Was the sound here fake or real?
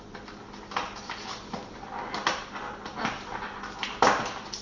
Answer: real